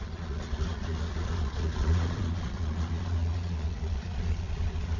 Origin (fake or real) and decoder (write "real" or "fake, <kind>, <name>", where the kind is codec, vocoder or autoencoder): fake, vocoder, Vocos